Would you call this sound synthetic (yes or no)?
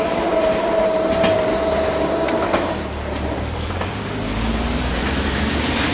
yes